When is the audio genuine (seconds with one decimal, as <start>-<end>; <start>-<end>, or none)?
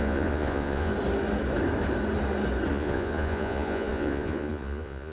0.9-2.7